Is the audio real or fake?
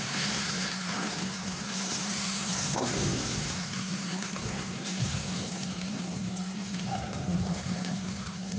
fake